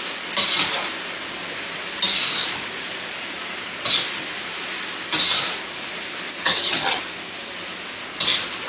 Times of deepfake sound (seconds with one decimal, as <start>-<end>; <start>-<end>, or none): 6.3-7.0